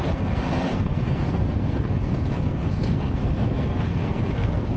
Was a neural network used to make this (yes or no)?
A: yes